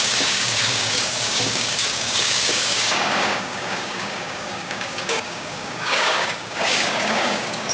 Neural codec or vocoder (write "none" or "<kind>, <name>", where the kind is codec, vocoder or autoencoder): codec, DAC